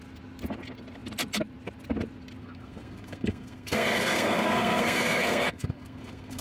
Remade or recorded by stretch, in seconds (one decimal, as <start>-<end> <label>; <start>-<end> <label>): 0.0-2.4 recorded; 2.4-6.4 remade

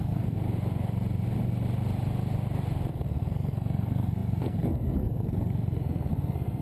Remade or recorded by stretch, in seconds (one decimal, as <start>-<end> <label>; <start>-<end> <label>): 0.0-0.4 remade; 0.4-2.9 recorded; 2.9-6.6 remade

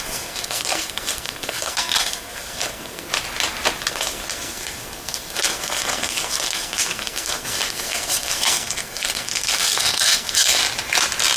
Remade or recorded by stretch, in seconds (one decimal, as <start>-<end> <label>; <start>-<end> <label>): 0.0-3.1 remade; 3.1-3.9 recorded; 3.9-10.6 remade; 10.6-11.4 recorded

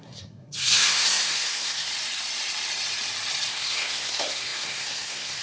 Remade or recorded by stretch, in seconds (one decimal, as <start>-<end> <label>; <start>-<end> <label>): 0.0-1.9 remade; 1.9-3.5 recorded; 3.5-5.4 remade

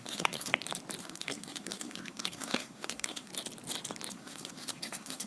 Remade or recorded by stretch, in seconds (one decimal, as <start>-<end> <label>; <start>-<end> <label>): 0.0-0.5 remade; 0.5-1.0 recorded; 1.0-3.3 remade; 3.3-4.1 recorded; 4.1-5.3 remade

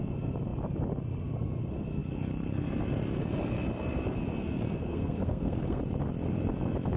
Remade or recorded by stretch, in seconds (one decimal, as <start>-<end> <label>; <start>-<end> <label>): 0.0-4.9 recorded; 4.9-5.8 remade; 5.8-7.0 recorded

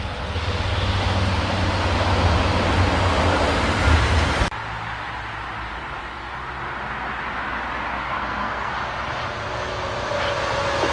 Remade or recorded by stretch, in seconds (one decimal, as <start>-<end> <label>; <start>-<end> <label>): 0.0-7.9 recorded; 7.9-8.7 remade; 8.7-10.9 recorded

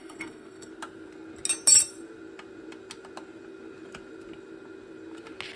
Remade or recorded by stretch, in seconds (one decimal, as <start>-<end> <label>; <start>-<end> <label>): 0.0-0.7 remade; 0.7-5.6 recorded